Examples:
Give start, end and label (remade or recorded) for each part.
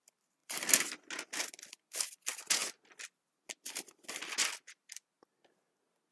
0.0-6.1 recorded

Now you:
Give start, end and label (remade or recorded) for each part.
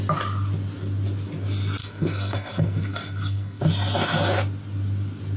0.0-1.8 recorded; 1.8-3.6 remade; 3.6-5.4 recorded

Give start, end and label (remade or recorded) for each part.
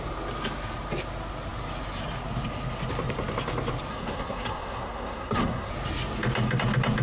0.0-3.9 recorded; 3.9-5.7 remade; 5.7-7.0 recorded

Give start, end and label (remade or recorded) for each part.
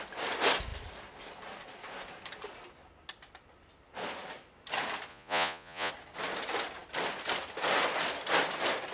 0.0-5.1 recorded; 5.1-5.9 remade; 5.9-8.9 recorded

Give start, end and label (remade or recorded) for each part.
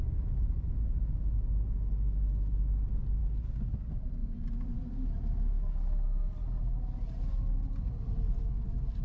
0.0-9.0 recorded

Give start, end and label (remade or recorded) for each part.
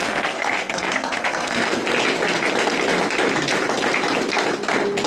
0.0-1.8 remade; 1.8-5.1 recorded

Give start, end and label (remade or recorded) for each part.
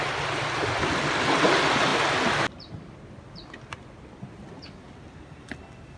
0.0-6.0 recorded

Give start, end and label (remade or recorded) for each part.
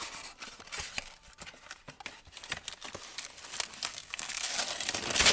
0.0-3.9 recorded; 3.9-4.5 remade; 4.5-5.3 recorded